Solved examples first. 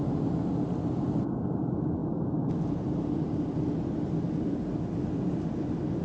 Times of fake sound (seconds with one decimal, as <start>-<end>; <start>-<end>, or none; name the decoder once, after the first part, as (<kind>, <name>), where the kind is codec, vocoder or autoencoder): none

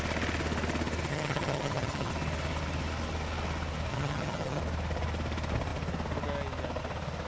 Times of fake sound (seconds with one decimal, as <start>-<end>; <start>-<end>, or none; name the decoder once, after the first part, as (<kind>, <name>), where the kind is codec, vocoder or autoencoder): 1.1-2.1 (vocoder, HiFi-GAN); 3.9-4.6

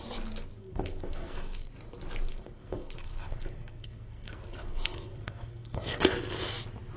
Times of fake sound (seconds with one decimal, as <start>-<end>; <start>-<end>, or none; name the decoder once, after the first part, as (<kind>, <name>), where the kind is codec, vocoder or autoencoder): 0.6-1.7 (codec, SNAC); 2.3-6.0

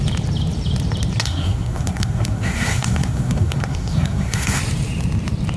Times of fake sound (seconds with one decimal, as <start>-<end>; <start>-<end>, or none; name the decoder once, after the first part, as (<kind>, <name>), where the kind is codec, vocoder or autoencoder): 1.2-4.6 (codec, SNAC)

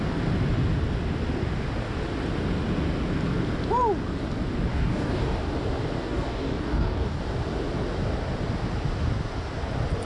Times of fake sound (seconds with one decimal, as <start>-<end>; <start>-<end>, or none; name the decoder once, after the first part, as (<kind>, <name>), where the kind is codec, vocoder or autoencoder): 4.7-5.4 (codec, DAC); 6.0-7.2

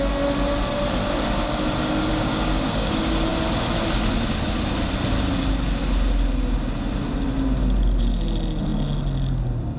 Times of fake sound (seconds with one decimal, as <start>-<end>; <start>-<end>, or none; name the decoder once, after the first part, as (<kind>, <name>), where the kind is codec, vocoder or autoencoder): 2.1-2.9 (codec, DAC)